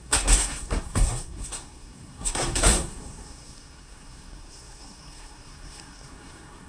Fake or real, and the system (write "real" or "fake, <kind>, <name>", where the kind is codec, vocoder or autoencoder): fake, codec, SNAC